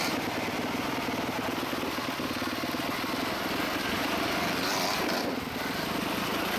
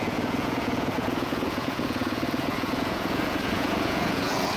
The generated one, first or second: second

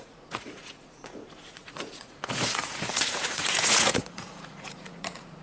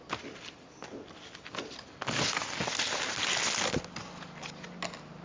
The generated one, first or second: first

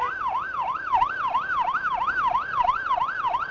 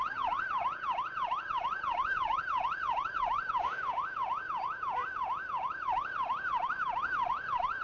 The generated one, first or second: second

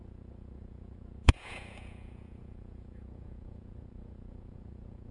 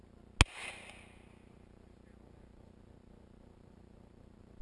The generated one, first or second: first